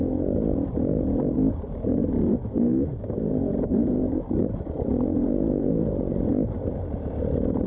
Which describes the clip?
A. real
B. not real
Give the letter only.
B